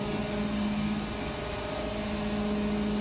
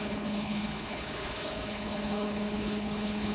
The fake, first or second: second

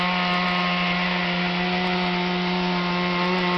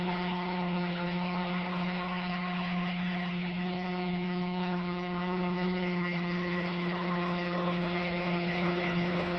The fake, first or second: second